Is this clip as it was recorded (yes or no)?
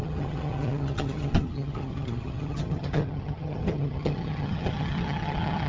no